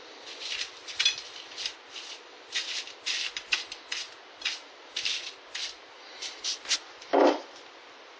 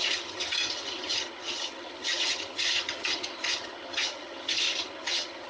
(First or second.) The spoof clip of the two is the second